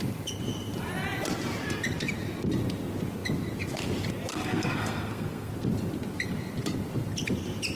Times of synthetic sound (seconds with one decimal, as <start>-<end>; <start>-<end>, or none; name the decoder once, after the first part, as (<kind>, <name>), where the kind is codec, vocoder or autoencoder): 4.3-5.5 (codec, SNAC)